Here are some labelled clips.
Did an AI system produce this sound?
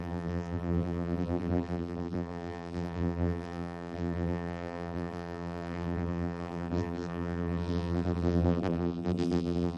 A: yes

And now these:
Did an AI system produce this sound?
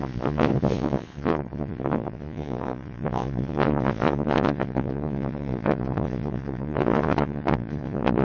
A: yes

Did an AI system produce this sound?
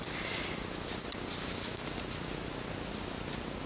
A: no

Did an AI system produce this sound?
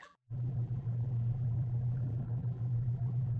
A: yes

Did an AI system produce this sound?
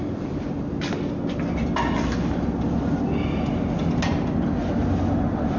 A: no